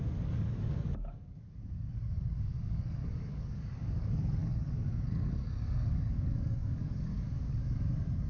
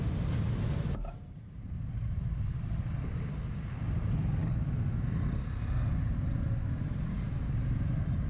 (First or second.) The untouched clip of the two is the second